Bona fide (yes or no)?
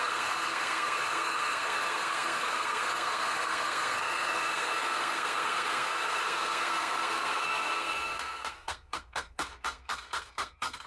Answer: no